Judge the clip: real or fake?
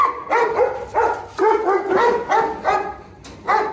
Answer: real